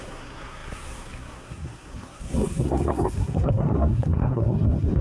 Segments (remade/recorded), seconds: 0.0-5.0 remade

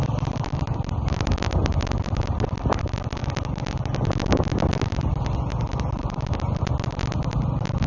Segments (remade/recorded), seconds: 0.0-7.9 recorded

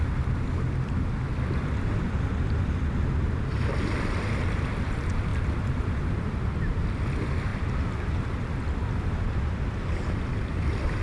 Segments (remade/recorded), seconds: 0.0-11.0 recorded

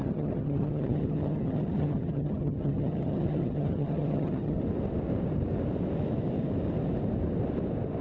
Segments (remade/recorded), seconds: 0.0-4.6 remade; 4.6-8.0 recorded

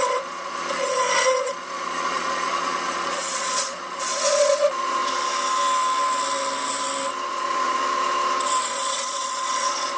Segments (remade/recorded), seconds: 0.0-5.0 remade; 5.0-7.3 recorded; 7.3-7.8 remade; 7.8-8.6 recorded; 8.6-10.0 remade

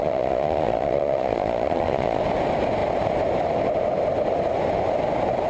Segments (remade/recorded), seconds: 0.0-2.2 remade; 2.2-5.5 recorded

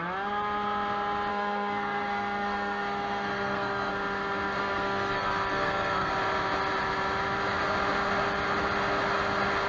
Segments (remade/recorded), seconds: 0.0-1.3 recorded; 1.3-3.9 remade; 3.9-4.6 recorded; 4.6-6.1 remade; 6.1-9.7 recorded